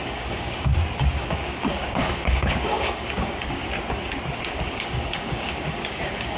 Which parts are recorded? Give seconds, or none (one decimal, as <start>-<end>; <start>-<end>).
0.7-1.2; 3.6-4.4